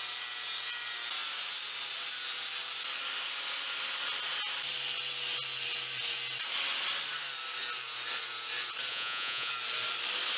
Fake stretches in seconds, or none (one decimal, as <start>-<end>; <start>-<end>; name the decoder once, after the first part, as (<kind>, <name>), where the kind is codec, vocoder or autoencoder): 8.9-9.5 (vocoder, Vocos)